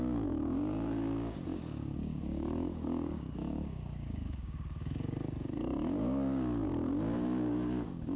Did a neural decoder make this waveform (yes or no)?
yes